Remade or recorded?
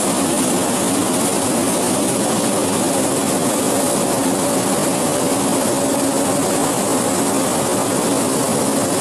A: recorded